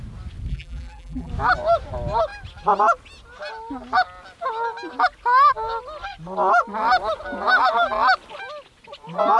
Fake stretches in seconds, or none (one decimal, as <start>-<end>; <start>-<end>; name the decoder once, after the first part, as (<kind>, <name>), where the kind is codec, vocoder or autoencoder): 0.5-1.3 (vocoder, BigVGAN v2)